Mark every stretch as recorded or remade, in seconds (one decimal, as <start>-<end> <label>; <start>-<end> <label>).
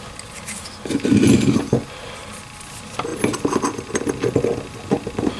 0.0-5.4 recorded